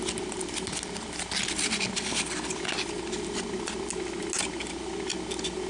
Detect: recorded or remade recorded